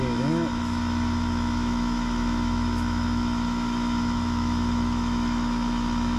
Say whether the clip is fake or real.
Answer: fake